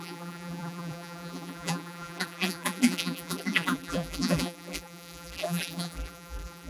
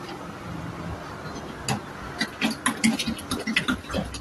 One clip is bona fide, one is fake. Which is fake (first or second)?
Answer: first